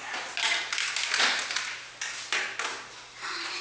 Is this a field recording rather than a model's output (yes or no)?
yes